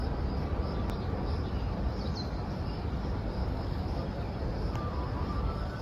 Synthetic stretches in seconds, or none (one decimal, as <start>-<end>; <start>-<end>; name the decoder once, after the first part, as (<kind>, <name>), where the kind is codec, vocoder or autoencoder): 3.4-4.0 (codec, DAC)